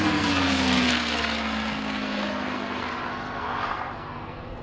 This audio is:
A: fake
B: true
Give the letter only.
A